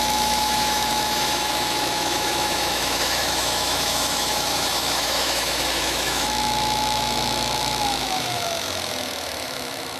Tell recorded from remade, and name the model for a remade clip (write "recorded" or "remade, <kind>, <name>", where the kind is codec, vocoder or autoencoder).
remade, autoencoder, DAC-VAE